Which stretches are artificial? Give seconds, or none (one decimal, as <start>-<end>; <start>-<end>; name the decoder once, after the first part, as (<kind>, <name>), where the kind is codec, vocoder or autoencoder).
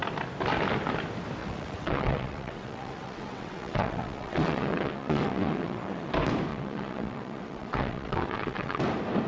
1.4-6.1 (vocoder, WaveNeXt); 6.5-8.8